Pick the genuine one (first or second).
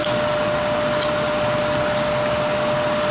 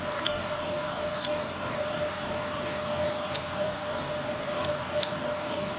first